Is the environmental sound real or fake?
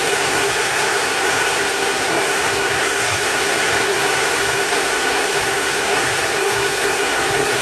fake